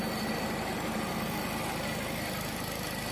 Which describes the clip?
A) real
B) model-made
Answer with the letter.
A